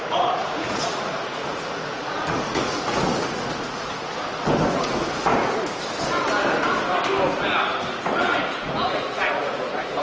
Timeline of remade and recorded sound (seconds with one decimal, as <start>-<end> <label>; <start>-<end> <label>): 0.0-3.9 remade; 3.9-4.7 recorded; 4.7-5.3 remade; 5.3-7.8 recorded; 7.8-10.0 remade